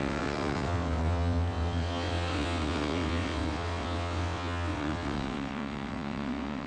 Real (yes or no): no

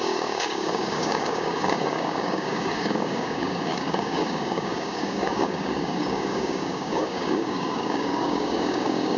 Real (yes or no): no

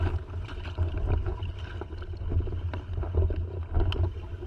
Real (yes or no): yes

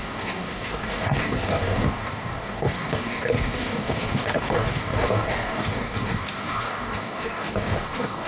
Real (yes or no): no